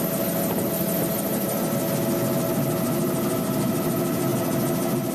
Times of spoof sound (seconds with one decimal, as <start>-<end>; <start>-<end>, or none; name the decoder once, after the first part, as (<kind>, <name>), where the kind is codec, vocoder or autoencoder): none